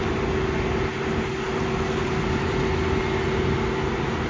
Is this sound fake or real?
real